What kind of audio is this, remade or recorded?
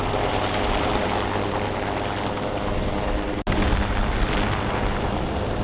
recorded